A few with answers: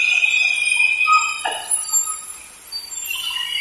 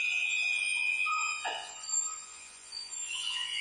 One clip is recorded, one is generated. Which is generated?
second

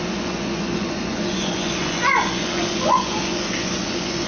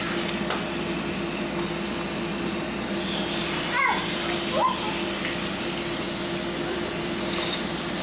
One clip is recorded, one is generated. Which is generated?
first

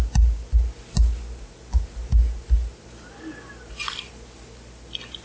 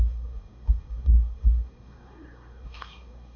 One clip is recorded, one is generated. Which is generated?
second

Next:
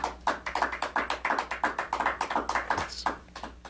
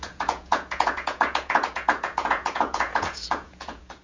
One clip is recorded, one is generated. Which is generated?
second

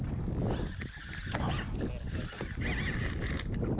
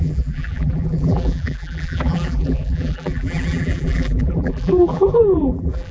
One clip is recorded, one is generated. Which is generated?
second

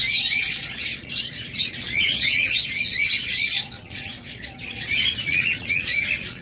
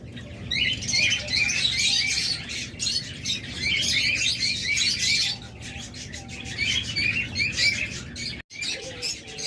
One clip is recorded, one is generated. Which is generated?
first